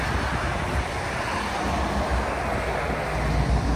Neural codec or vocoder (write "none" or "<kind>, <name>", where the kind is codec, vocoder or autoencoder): none